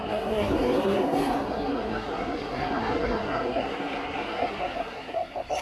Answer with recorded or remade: remade